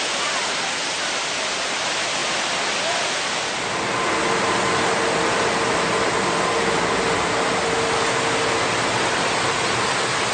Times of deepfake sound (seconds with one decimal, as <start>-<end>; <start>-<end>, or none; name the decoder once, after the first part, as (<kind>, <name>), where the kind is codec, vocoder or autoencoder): none